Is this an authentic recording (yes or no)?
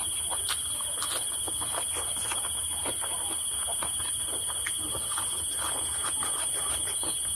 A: yes